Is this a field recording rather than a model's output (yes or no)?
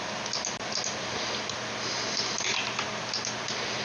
yes